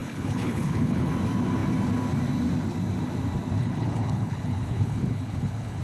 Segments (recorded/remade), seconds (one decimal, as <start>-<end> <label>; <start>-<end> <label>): 0.0-1.1 remade; 1.1-3.6 recorded; 3.6-5.8 remade